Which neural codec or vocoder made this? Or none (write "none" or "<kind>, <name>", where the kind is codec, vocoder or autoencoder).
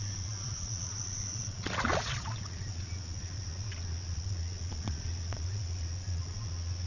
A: vocoder, Vocos